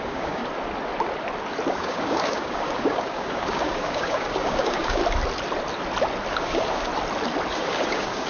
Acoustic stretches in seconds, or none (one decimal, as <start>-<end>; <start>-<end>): 0.4-1.7; 5.0-6.3; 6.9-7.5